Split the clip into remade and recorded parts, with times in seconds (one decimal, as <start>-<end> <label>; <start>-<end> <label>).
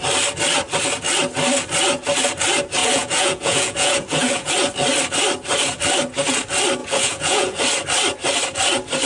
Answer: 0.0-2.8 recorded; 2.8-4.5 remade; 4.5-6.8 recorded; 6.8-7.6 remade; 7.6-9.1 recorded